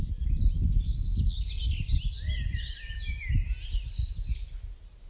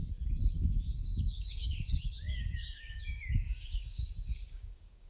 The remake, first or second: second